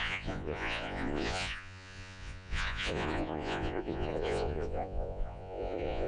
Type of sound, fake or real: fake